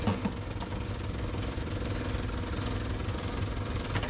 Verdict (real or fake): real